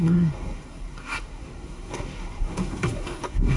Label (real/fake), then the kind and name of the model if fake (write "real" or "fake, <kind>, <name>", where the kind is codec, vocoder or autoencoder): fake, codec, SNAC